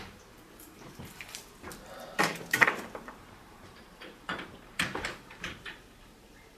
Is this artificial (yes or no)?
yes